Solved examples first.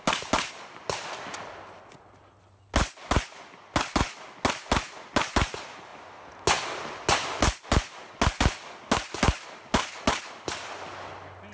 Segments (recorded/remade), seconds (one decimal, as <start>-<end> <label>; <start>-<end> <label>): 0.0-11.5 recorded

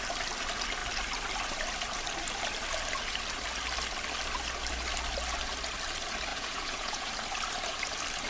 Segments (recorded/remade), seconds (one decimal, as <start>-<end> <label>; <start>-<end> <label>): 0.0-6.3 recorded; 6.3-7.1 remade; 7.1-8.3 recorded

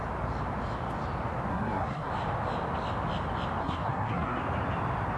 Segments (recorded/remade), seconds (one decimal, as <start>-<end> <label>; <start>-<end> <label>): 0.0-1.5 recorded; 1.5-2.1 remade; 2.1-3.6 recorded; 3.6-4.4 remade; 4.4-5.2 recorded

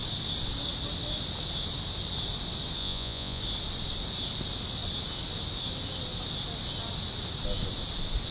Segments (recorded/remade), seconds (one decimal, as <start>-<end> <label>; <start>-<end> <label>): 0.0-2.8 recorded; 2.8-3.4 remade; 3.4-8.3 recorded

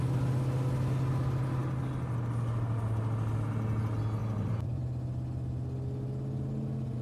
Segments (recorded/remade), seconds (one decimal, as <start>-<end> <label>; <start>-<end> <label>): 0.0-4.2 recorded; 4.2-4.8 remade; 4.8-7.0 recorded

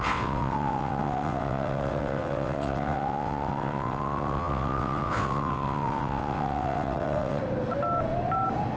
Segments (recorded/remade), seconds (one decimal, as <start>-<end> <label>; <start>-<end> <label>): 0.0-7.4 remade; 7.4-8.8 recorded

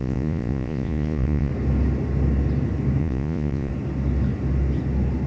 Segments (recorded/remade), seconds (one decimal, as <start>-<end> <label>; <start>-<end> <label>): 0.0-1.5 remade; 1.5-3.0 recorded; 3.0-3.7 remade; 3.7-5.3 recorded